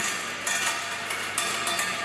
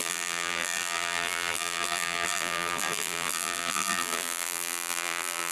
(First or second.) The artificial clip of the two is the second